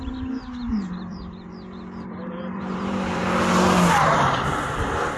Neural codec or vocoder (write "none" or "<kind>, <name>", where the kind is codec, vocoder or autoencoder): vocoder, BigVGAN v2